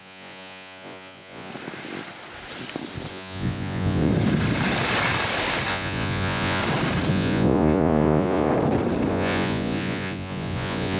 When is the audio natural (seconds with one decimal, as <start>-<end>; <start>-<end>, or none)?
1.5-3.1; 4.1-5.7; 6.6-7.1; 8.5-9.1